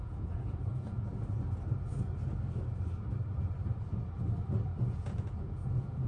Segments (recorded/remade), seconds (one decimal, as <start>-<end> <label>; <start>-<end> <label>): 0.0-1.1 remade; 1.1-4.8 recorded; 4.8-6.1 remade